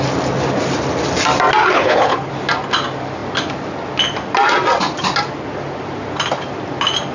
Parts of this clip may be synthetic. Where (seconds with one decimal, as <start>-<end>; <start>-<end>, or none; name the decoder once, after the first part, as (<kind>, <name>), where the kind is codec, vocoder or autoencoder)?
1.6-2.3 (codec, HILCodec)